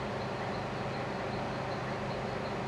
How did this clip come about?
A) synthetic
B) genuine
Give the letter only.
B